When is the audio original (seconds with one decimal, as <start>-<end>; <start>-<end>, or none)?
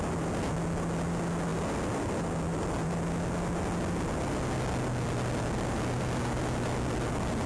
0.0-7.5